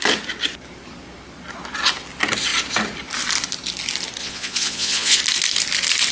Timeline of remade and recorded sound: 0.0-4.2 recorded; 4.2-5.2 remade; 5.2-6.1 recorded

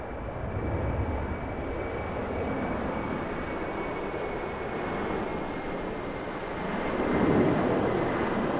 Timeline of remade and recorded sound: 0.0-2.2 recorded; 2.2-3.1 remade; 3.1-8.6 recorded

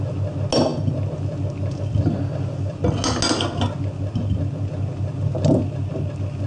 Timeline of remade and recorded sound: 0.0-6.5 recorded

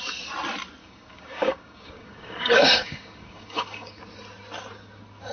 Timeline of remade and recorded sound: 0.0-0.8 recorded; 0.8-4.0 remade; 4.0-5.3 recorded

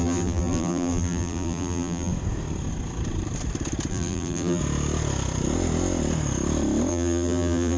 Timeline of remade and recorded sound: 0.0-2.1 remade; 2.1-3.9 recorded; 3.9-4.6 remade; 4.6-6.9 recorded; 6.9-7.8 remade

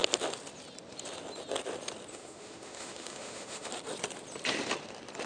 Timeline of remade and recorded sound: 0.0-2.1 recorded; 2.1-3.7 remade; 3.7-5.3 recorded